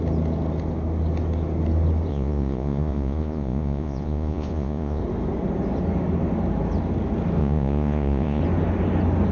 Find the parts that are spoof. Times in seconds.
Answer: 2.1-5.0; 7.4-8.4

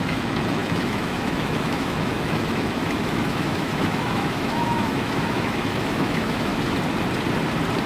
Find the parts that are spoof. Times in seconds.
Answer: 0.0-6.5

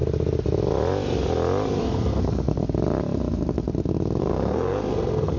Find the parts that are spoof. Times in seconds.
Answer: 1.8-2.6; 4.2-5.4

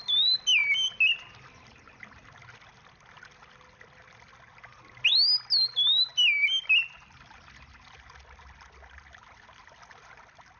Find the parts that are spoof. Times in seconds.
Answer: none

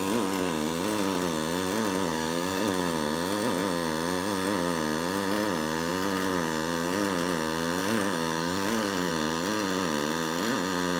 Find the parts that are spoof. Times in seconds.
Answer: 2.1-2.8; 7.8-9.1

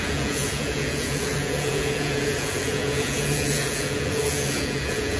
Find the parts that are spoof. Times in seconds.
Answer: 0.0-5.2